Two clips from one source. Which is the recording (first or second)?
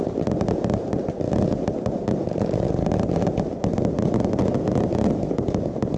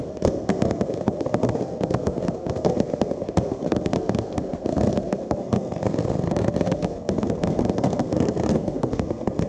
first